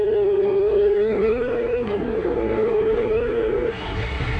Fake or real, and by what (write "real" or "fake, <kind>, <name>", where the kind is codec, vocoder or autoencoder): fake, codec, SNAC